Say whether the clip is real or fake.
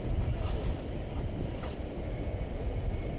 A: real